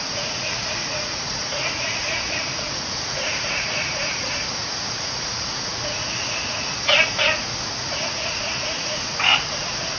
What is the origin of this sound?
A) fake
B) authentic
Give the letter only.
A